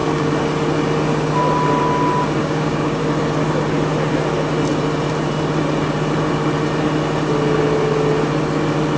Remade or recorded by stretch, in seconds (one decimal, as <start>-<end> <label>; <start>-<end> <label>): 0.0-2.4 recorded; 2.4-3.0 remade; 3.0-9.0 recorded